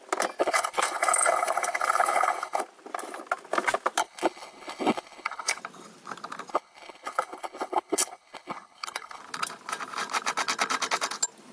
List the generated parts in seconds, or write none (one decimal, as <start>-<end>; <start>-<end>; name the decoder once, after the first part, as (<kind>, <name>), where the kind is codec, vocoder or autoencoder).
0.4-2.6 (codec, HILCodec); 4.0-5.6; 6.5-9.2